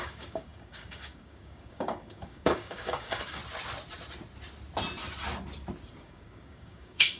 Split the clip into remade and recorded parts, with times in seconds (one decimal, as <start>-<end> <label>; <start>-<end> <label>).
0.0-3.4 remade; 3.4-5.9 recorded; 5.9-7.2 remade